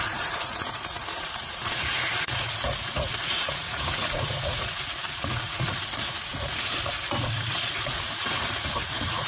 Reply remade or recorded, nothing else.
remade